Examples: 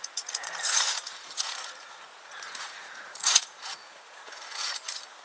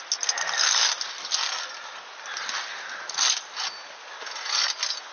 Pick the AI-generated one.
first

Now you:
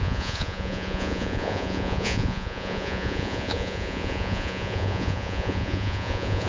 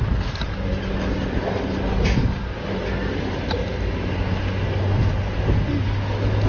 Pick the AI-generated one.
first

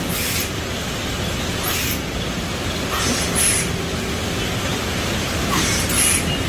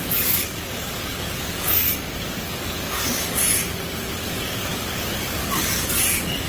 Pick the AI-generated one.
second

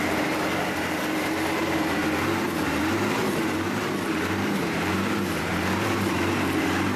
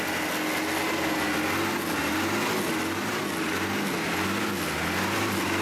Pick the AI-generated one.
first